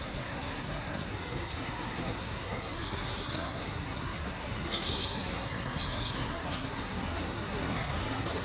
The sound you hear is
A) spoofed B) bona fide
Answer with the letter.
A